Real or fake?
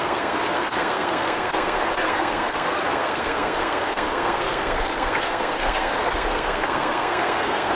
fake